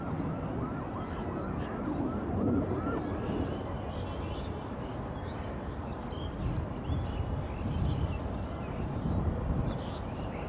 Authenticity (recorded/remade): recorded